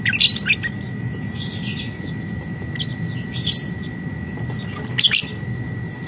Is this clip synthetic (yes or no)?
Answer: no